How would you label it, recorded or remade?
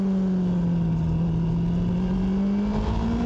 recorded